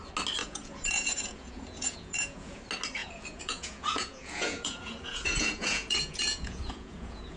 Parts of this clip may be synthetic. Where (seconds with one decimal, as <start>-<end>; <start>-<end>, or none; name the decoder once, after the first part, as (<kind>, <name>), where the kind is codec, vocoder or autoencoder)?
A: 0.4-2.6 (vocoder, Vocos); 3.0-7.4